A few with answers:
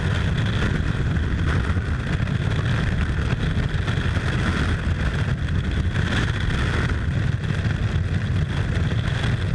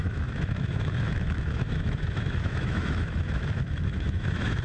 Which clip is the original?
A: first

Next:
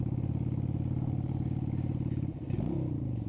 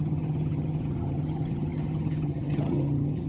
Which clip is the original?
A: first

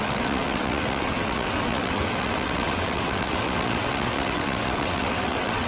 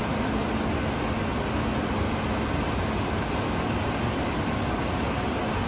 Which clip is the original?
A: second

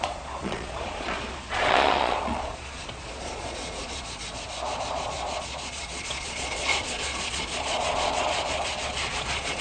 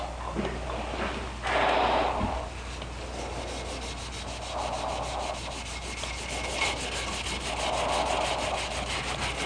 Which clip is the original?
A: second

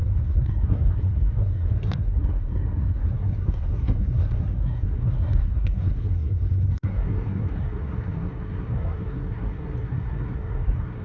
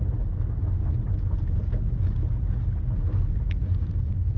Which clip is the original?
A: second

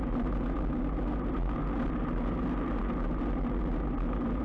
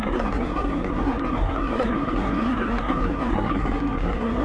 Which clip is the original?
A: first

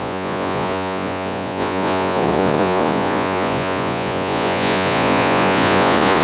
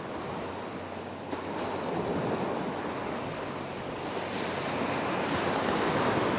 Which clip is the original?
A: second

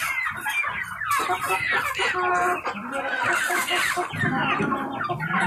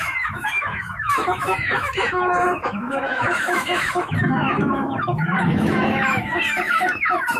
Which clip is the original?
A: first